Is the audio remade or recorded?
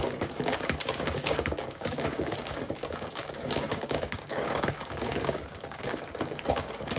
remade